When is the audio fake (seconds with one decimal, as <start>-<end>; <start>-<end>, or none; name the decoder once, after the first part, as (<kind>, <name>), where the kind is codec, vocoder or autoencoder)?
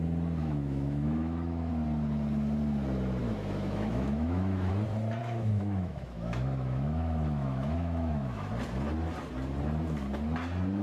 0.4-1.7 (autoencoder, DAC-VAE); 3.2-4.7; 5.2-8.5